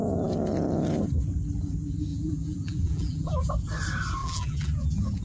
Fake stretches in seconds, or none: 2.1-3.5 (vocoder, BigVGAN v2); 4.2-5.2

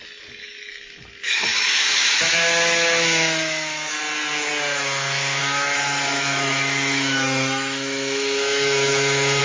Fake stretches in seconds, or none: 0.4-4.0 (autoencoder, DAC-VAE); 5.4-9.4

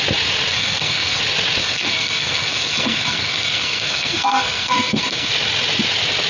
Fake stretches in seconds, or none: 0.5-1.2 (codec, SNAC); 1.6-5.3

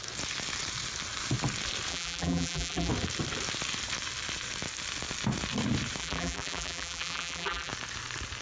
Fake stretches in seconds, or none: 1.9-2.9 (vocoder, BigVGAN v2); 6.0-7.7

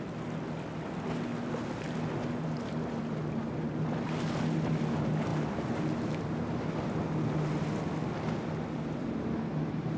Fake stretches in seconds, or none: none

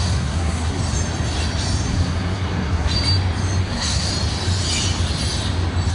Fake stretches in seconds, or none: 0.0-0.8 (codec, SNAC); 1.9-2.9; 3.6-4.1